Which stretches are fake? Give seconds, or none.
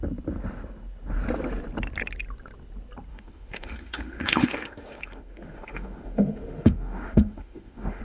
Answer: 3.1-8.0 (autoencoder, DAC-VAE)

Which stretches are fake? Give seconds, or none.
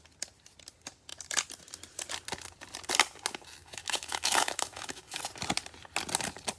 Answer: 3.6-5.2 (autoencoder, DAC-VAE)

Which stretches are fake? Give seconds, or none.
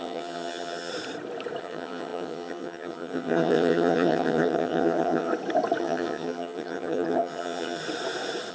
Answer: 0.0-0.9 (vocoder, HiFi-GAN); 1.6-5.3; 5.8-7.8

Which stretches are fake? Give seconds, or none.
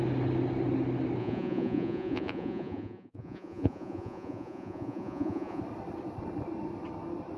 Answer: 1.2-5.6 (vocoder, Vocos)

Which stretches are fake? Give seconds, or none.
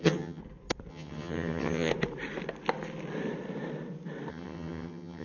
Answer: 0.0-0.4 (vocoder, HiFi-GAN); 0.9-1.9; 4.3-5.2